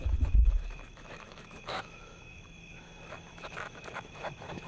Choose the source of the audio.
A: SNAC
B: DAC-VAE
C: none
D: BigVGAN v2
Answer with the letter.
B